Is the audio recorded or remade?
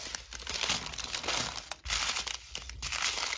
recorded